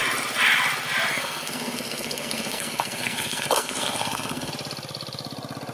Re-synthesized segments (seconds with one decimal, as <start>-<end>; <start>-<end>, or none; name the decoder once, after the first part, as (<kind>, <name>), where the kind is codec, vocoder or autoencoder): 1.1-4.5 (codec, SNAC)